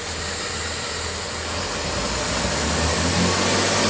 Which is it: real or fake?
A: real